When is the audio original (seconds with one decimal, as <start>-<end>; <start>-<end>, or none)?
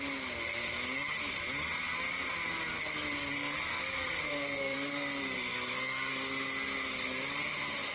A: 0.0-3.3; 6.1-7.9